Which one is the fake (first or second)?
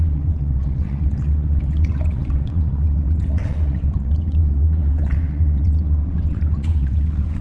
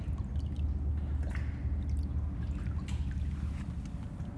first